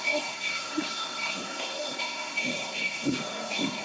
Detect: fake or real fake